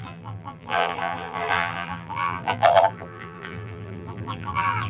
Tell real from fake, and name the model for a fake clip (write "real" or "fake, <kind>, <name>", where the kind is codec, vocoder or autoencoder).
fake, vocoder, BigVGAN v2